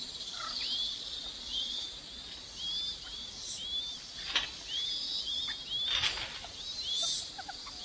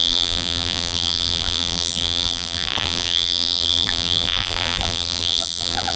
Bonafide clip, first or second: first